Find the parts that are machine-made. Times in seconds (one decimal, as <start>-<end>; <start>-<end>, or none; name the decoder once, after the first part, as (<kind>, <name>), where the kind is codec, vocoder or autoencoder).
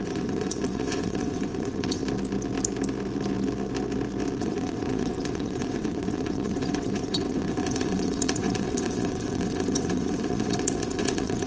0.0-2.0 (vocoder, WaveNeXt); 4.4-11.5